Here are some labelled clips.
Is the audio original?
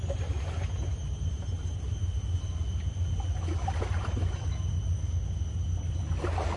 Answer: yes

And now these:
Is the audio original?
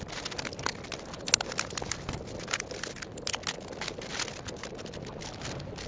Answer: yes